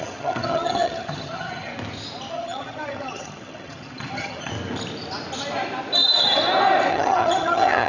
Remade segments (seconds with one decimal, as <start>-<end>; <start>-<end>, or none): 0.0-1.7; 2.3-4.5; 6.9-7.9